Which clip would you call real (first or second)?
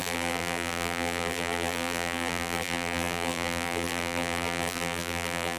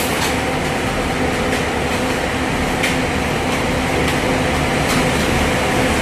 second